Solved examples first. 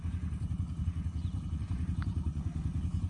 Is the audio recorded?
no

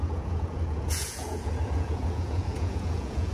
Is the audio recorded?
no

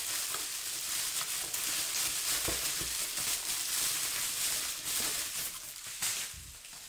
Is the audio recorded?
yes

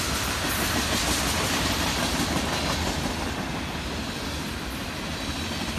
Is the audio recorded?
yes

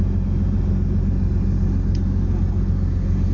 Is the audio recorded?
yes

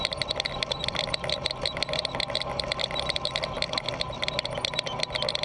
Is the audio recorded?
yes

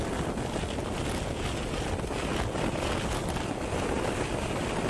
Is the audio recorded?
yes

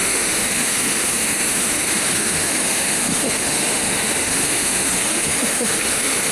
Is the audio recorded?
no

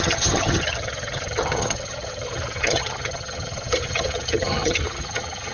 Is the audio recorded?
no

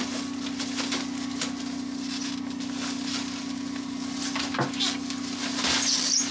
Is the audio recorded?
yes